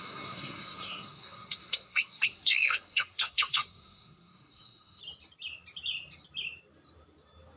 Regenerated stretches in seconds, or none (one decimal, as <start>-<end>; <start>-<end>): 0.0-5.0